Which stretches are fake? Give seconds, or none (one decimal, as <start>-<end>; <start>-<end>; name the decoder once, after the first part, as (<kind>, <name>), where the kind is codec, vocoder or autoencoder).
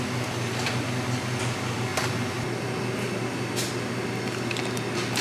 none